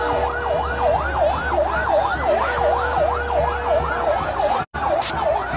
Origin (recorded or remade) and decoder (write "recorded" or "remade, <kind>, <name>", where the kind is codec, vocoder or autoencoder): recorded